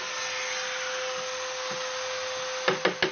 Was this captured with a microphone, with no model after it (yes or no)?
yes